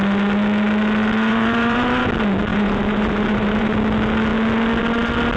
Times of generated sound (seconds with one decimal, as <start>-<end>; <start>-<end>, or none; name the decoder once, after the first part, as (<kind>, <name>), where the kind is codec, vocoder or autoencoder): 1.3-2.0 (vocoder, BigVGAN v2); 2.5-3.8